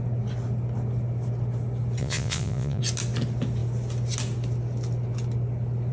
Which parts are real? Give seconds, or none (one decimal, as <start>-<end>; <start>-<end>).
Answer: 0.0-2.0; 2.8-5.9